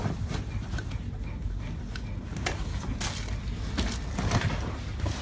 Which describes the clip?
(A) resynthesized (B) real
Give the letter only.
B